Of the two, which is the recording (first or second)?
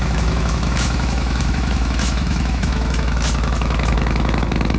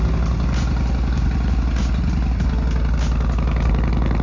second